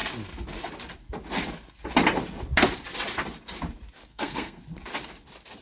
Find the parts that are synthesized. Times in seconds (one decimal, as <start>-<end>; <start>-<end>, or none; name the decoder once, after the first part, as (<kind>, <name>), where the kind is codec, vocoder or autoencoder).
4.1-4.6 (codec, SNAC)

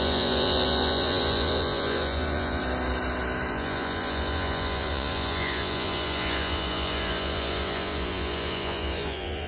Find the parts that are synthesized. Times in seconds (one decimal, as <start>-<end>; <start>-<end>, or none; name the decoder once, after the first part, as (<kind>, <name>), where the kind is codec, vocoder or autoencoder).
0.0-2.6 (vocoder, Vocos); 3.5-9.5

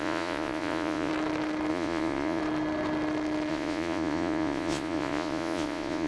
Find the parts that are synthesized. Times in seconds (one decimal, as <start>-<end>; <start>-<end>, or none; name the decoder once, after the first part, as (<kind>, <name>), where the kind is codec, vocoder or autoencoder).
0.0-1.1 (vocoder, Vocos); 1.7-2.4; 3.5-6.1

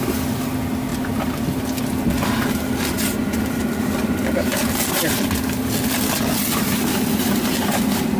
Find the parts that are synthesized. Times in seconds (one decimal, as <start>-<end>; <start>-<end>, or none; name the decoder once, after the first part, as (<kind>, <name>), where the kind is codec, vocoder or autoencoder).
0.9-1.6 (vocoder, BigVGAN v2)

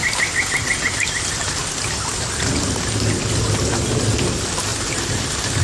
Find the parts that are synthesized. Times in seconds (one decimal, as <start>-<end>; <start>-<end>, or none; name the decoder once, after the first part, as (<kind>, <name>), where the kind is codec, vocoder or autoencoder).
none